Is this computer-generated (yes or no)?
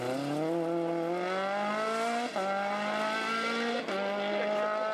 no